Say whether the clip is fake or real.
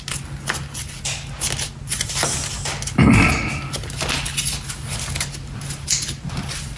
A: real